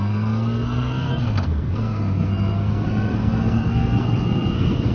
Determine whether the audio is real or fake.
fake